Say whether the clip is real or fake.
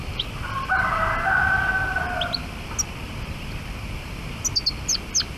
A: real